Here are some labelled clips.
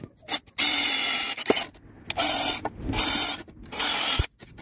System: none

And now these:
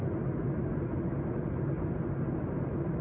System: none